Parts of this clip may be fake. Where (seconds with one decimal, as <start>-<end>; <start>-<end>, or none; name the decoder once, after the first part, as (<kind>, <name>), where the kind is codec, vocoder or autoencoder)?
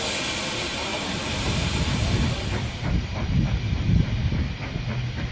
0.9-4.0 (vocoder, BigVGAN v2)